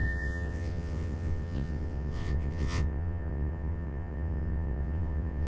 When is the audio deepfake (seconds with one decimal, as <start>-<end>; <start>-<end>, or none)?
0.0-5.5